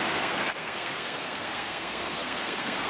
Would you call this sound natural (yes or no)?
no